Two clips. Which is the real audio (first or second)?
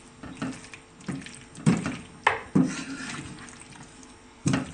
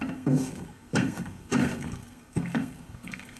first